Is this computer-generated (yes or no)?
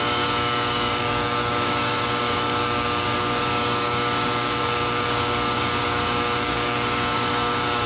yes